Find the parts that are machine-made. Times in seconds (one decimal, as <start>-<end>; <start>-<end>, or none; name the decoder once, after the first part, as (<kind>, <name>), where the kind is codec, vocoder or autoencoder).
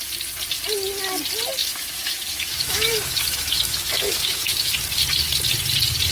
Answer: 1.6-4.7 (autoencoder, DAC-VAE)